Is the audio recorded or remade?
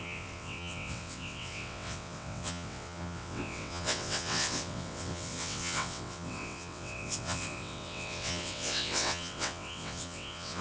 remade